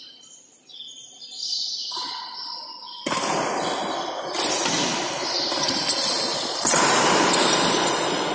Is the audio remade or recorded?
recorded